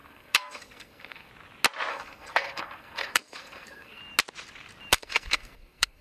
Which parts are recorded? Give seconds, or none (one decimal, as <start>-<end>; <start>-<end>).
1.3-1.9; 4.0-4.9